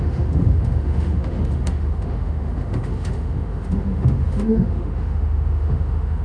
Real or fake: fake